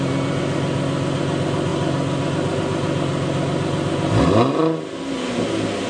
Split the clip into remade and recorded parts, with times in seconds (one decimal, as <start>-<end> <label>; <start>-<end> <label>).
0.0-5.9 recorded